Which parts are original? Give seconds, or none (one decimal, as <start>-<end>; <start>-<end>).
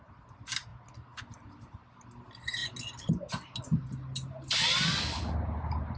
0.0-6.0